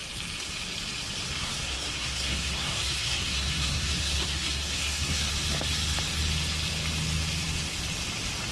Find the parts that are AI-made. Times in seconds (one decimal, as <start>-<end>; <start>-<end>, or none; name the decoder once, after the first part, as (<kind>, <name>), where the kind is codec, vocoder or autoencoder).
1.4-5.3 (codec, SNAC)

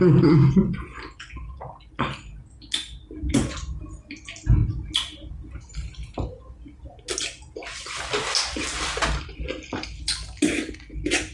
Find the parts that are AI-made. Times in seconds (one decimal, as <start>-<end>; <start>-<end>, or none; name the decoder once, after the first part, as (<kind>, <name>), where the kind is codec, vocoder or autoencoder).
none

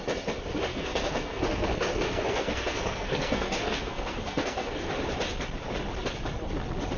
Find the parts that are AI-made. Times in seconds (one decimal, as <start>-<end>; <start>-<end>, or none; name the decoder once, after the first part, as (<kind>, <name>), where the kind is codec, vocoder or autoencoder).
0.7-4.9 (codec, SNAC)